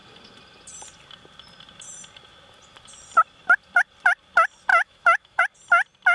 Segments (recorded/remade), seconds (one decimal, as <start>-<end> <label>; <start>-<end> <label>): 0.0-4.7 recorded; 4.7-5.4 remade; 5.4-6.1 recorded